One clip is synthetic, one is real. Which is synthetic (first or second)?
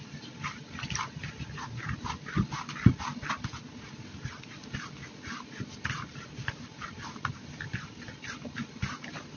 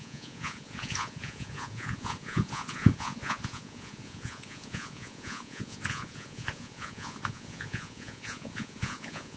second